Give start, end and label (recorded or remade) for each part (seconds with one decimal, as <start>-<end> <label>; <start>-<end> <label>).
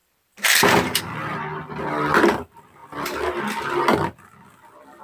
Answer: 0.0-1.0 remade; 1.0-2.8 recorded; 2.8-3.6 remade; 3.6-5.0 recorded